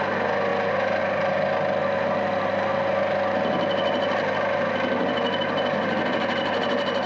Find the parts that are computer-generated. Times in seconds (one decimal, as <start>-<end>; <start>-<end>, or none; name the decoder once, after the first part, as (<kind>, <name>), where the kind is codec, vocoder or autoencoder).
none